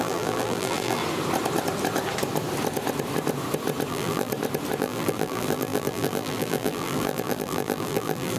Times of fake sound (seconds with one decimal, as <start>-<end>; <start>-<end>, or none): 0.0-1.0; 3.9-4.3; 4.8-8.4

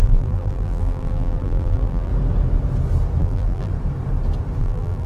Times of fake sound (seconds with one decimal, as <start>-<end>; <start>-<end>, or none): 0.0-2.1; 3.2-3.7; 4.6-5.1

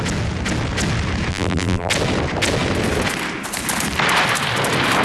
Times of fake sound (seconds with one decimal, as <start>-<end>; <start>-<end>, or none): 1.3-1.9

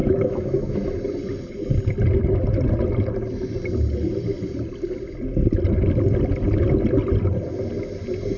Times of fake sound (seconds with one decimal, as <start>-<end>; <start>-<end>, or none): 0.0-0.9